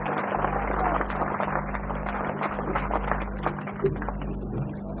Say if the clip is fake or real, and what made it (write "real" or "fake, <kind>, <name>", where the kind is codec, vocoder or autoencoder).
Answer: real